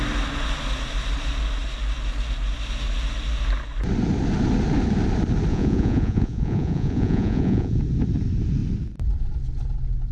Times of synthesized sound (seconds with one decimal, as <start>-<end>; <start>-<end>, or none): 5.5-7.8